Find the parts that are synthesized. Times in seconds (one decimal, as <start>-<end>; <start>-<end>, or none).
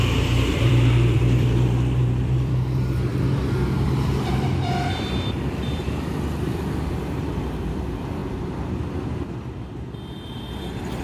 0.0-8.2; 8.8-11.0